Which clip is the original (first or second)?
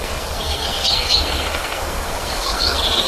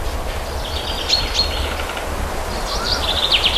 second